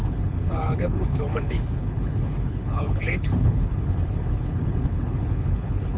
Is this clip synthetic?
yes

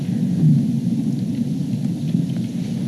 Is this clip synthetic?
no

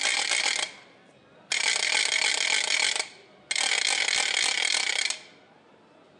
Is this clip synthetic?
no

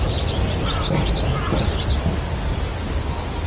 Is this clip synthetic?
no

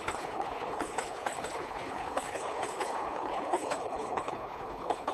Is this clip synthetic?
yes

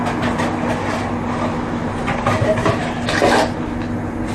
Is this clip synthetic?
no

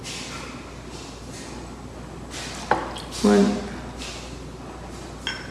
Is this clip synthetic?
no